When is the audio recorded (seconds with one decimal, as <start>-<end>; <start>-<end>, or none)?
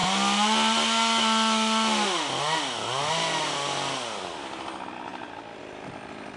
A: 0.0-6.4